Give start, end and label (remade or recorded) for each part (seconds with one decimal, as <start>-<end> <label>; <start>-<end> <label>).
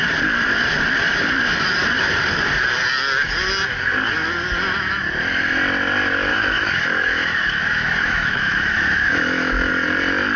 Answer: 0.0-6.3 recorded; 6.3-9.7 remade; 9.7-10.4 recorded